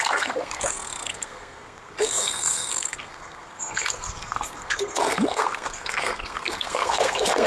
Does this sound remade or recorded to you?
remade